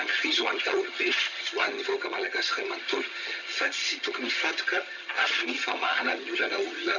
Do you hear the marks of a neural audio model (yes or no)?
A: yes